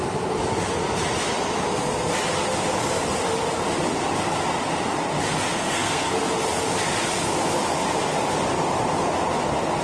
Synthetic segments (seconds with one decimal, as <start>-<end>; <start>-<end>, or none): 5.5-6.2